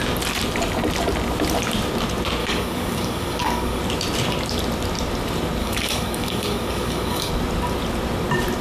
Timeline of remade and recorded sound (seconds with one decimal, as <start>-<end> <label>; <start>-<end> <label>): 0.0-2.4 recorded; 2.4-3.8 remade; 3.8-5.6 recorded; 5.6-7.3 remade; 7.3-8.6 recorded